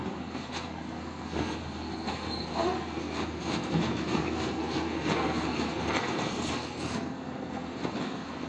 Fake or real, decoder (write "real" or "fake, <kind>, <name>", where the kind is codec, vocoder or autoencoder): fake, codec, SNAC